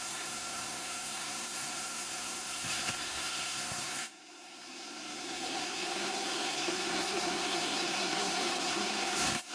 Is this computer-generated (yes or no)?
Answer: yes